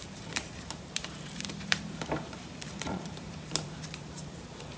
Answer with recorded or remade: remade